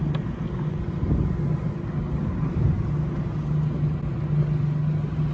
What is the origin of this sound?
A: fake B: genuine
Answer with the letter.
B